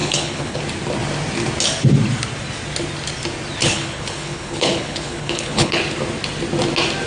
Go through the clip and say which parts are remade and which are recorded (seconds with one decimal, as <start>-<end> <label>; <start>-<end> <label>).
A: 0.0-0.6 remade; 0.6-3.6 recorded; 3.6-5.8 remade; 5.8-7.1 recorded